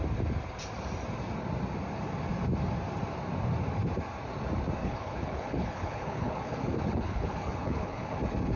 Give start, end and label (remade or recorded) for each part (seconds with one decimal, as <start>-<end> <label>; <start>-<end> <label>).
0.0-4.8 recorded; 4.8-8.2 remade; 8.2-8.6 recorded